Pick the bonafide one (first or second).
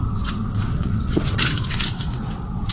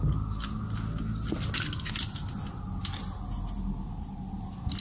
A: second